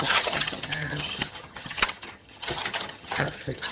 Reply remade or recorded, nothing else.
remade